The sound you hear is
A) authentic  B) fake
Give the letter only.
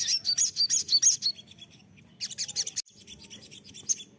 A